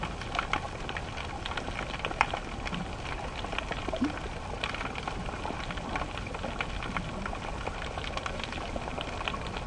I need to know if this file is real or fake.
real